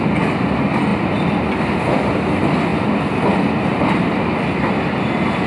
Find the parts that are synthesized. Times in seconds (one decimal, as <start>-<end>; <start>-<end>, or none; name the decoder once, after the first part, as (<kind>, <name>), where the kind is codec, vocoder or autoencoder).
none